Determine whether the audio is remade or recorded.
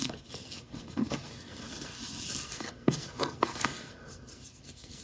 remade